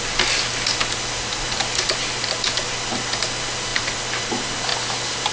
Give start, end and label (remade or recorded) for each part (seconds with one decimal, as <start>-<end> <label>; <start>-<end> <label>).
0.0-5.3 recorded